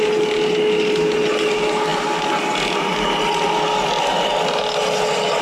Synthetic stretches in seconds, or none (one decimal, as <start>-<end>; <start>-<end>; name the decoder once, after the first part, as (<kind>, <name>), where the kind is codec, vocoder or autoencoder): none